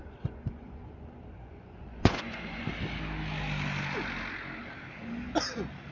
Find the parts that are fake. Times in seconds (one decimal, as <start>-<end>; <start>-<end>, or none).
0.0-2.7